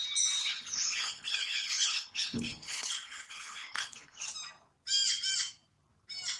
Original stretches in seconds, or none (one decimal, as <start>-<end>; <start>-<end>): 0.0-0.4; 4.2-6.4